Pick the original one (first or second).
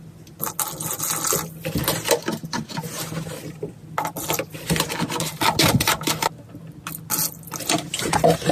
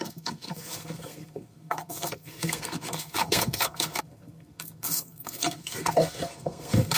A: first